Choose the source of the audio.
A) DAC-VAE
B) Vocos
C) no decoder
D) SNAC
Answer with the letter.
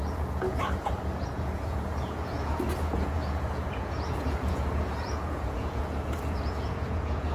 B